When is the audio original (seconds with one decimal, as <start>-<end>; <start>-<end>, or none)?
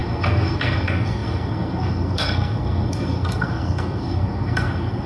none